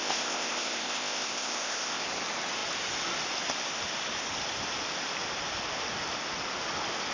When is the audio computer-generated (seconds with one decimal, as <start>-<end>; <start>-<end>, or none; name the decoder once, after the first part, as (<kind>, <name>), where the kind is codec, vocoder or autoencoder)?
0.0-2.0 (codec, ZipCodec)